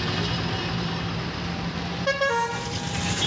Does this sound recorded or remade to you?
recorded